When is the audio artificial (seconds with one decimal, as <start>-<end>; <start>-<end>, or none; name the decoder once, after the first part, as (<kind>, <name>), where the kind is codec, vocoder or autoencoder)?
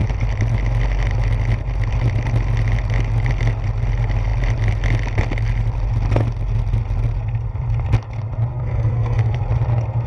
8.5-9.4 (codec, SNAC)